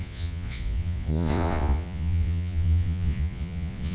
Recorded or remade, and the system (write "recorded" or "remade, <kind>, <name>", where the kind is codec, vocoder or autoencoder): remade, vocoder, Vocos